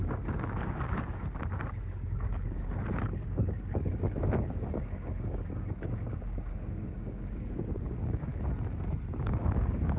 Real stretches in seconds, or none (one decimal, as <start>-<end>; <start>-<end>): 8.3-9.2